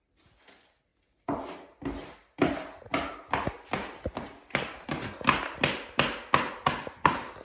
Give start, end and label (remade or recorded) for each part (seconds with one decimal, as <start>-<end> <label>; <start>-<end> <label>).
0.0-2.9 remade; 2.9-6.5 recorded; 6.5-7.4 remade